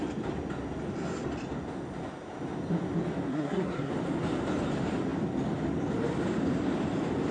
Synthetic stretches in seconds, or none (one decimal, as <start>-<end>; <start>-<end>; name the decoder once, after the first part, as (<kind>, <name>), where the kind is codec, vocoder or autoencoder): 3.3-3.9 (codec, SNAC)